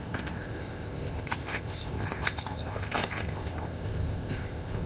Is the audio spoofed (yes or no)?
yes